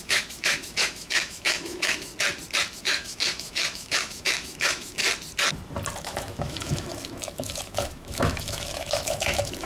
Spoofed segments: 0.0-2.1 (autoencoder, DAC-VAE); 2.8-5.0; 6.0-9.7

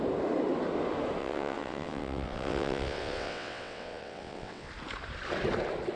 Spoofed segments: 1.2-4.7 (vocoder, WaveNeXt)

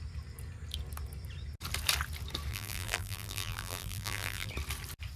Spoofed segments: 2.5-4.5 (vocoder, BigVGAN v2)

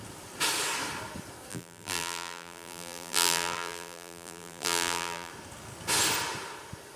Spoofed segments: 1.5-5.3 (vocoder, BigVGAN v2)

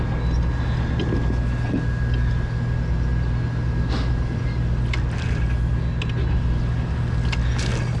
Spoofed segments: none